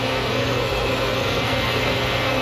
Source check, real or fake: fake